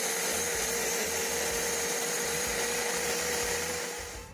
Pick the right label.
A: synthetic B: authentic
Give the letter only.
B